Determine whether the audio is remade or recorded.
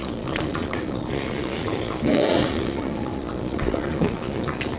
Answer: remade